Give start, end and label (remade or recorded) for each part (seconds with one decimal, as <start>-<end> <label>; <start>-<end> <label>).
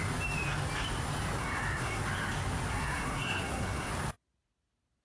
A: 0.0-1.4 recorded; 1.4-2.0 remade; 2.0-2.7 recorded; 2.7-3.9 remade; 3.9-5.0 recorded